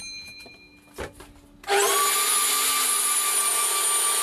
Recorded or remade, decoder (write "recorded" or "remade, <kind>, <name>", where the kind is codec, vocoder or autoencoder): recorded